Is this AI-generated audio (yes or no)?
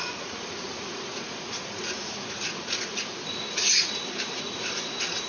yes